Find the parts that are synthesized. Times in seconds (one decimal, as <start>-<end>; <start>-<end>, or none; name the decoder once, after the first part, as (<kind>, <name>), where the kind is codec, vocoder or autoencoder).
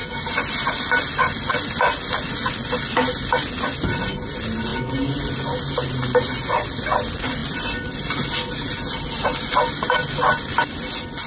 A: 0.0-0.5 (vocoder, BigVGAN v2)